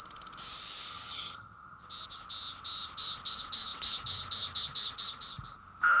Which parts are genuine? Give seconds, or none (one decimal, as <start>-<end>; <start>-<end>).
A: 0.0-0.9; 1.8-6.0